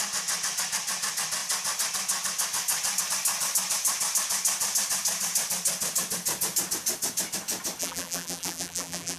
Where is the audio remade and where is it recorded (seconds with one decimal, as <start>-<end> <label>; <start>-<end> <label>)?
0.0-7.8 recorded; 7.8-9.2 remade